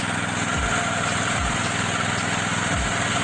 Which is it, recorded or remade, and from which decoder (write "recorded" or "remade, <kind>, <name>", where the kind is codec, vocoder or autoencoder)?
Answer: recorded